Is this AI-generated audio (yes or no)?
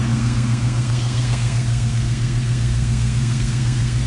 yes